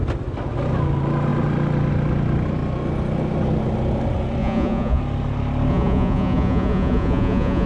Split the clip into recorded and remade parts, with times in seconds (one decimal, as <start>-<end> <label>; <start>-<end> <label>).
0.0-4.4 recorded; 4.4-5.0 remade; 5.0-5.7 recorded; 5.7-7.7 remade